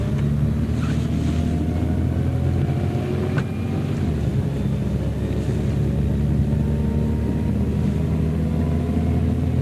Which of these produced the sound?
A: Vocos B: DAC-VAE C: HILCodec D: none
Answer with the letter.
D